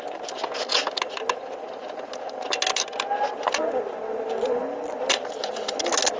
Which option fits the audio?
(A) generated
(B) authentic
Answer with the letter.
B